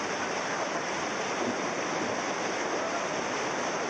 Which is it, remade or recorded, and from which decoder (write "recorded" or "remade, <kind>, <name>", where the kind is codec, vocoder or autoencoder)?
recorded